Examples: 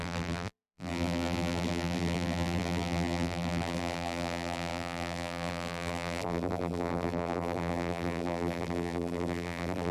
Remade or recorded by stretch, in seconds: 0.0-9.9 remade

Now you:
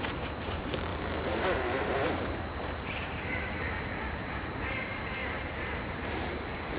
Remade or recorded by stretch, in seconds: 0.0-0.9 recorded; 0.9-4.7 remade; 4.7-5.2 recorded; 5.2-6.3 remade; 6.3-6.8 recorded

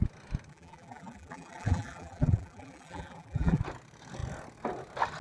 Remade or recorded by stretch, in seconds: 0.0-0.5 recorded; 0.5-3.6 remade; 3.6-5.2 recorded

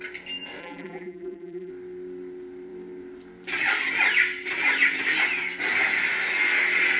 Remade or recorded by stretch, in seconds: 0.0-0.6 recorded; 0.6-1.7 remade; 1.7-7.0 recorded

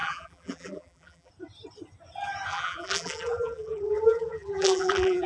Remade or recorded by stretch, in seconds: 0.0-1.3 remade; 1.3-2.5 recorded; 2.5-5.3 remade

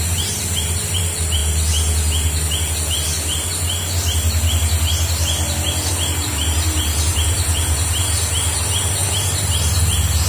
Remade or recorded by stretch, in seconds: 0.0-1.4 remade; 1.4-5.9 recorded; 5.9-10.3 remade

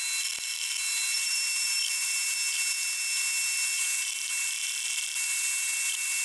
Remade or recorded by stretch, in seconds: 0.0-1.3 recorded; 1.3-2.1 remade; 2.1-6.2 recorded